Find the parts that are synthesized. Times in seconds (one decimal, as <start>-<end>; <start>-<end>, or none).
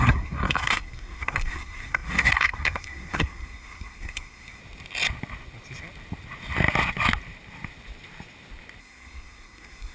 0.0-4.6; 8.8-9.9